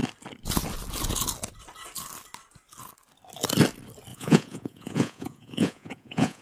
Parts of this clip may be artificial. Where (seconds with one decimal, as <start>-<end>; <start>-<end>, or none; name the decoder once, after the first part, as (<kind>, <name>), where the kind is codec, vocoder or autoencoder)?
4.1-6.4 (vocoder, Vocos)